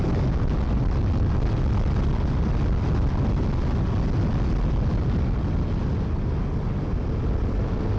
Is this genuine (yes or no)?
yes